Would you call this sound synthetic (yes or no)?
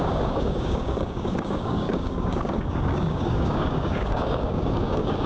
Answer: yes